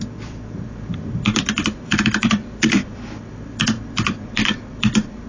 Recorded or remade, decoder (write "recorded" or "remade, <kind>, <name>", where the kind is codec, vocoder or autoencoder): remade, vocoder, BigVGAN v2